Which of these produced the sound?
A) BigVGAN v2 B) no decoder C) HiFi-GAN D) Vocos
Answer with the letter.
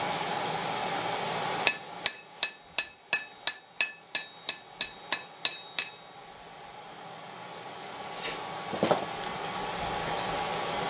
B